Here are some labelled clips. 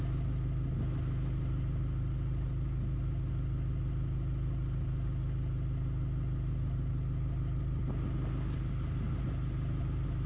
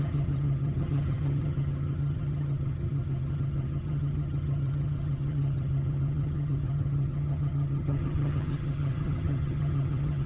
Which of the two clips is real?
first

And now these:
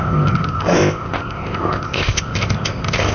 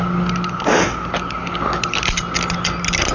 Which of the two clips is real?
second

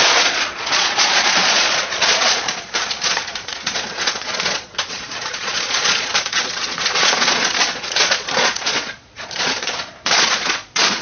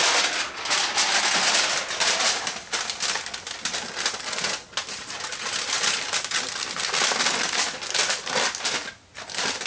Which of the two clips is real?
second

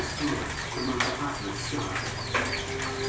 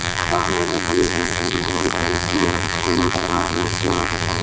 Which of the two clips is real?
first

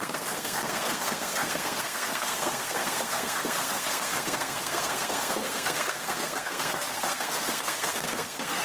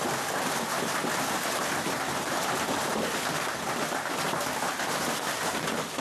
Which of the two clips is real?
second